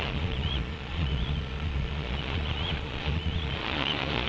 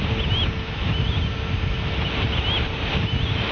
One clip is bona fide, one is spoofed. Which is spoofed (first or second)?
first